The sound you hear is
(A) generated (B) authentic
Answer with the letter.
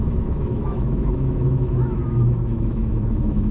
A